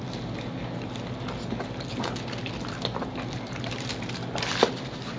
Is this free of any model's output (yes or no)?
yes